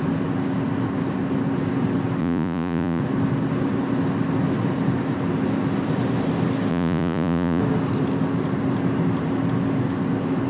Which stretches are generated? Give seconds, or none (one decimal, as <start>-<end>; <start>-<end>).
2.2-3.0; 6.7-7.6